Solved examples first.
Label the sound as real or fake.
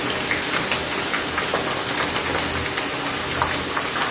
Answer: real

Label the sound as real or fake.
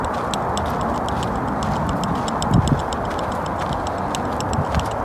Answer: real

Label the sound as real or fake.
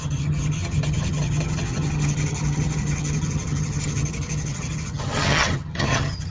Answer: fake